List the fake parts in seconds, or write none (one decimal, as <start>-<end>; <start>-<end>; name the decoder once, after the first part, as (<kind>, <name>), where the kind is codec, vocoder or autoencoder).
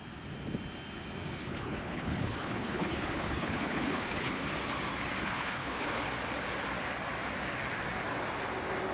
1.4-4.4 (codec, HILCodec); 5.2-6.0